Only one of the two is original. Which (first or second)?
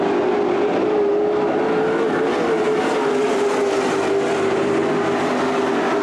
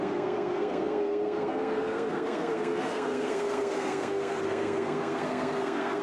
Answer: first